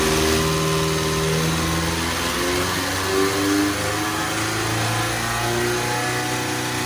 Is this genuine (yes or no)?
yes